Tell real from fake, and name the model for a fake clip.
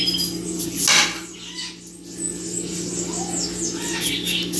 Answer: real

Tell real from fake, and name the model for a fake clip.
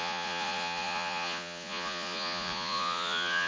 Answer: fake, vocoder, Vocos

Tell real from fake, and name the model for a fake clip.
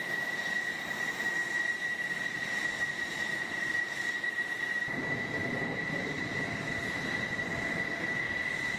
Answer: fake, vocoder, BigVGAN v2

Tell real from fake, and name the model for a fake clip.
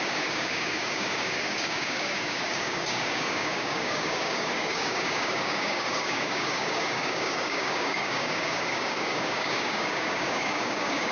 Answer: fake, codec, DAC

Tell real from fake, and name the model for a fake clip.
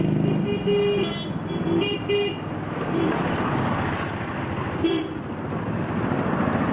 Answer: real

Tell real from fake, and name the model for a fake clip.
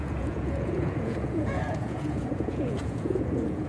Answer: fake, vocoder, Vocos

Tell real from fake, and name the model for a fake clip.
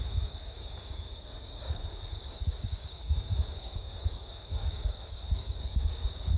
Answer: fake, codec, DAC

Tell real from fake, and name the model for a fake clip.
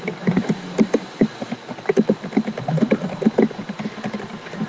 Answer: real